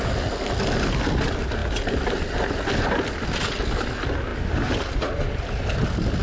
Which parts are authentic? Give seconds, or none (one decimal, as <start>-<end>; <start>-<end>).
0.0-6.2